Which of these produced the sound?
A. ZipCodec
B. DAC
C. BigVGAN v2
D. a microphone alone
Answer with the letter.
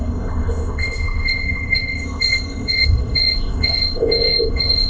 A